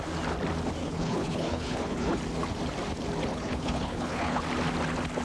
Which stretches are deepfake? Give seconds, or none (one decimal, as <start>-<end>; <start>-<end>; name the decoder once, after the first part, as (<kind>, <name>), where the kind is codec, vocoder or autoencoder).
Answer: 0.8-2.2 (codec, HILCodec); 3.3-4.4